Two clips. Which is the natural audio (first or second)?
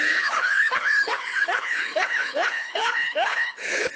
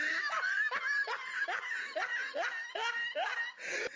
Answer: second